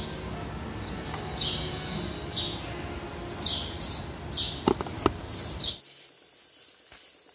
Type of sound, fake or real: real